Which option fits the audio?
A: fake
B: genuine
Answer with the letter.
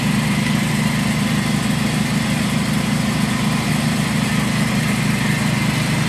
B